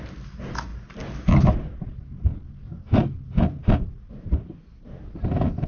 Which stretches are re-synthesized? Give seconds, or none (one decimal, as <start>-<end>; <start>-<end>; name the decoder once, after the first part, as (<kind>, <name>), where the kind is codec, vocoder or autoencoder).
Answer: none